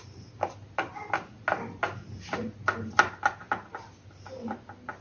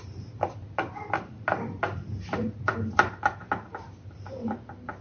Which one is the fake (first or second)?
second